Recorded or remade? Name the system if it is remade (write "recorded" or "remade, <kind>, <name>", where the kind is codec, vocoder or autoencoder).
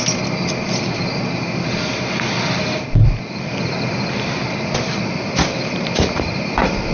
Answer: recorded